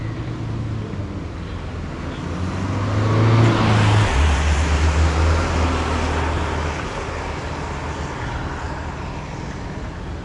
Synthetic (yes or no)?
no